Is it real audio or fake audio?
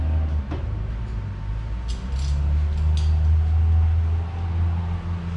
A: real